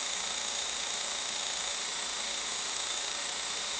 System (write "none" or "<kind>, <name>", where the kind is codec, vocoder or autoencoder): autoencoder, DAC-VAE